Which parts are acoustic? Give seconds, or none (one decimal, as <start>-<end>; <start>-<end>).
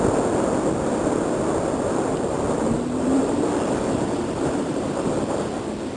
0.0-2.1; 5.5-6.0